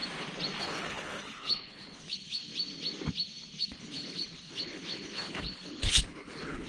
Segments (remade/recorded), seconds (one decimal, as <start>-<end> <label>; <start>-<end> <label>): 0.0-0.6 recorded; 0.6-2.5 remade; 2.5-3.6 recorded; 3.6-6.7 remade